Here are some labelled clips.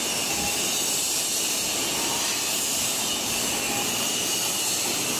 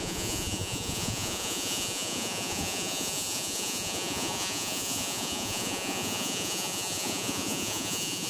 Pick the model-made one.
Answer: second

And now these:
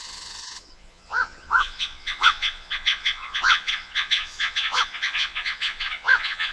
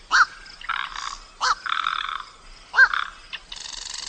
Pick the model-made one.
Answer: first